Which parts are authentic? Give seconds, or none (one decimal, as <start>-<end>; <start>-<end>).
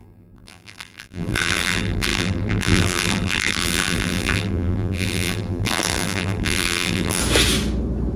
7.2-8.2